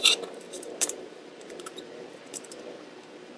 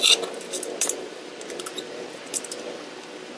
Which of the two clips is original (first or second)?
second